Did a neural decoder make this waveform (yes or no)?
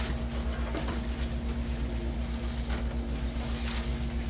no